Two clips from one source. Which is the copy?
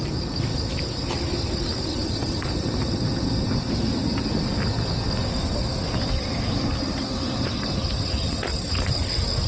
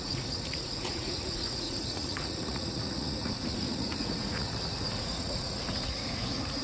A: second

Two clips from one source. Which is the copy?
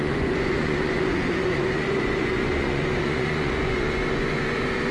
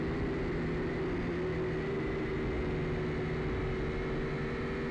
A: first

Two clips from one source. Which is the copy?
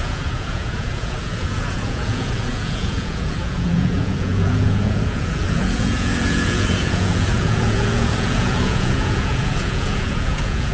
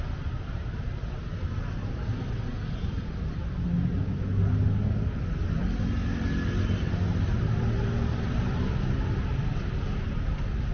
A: first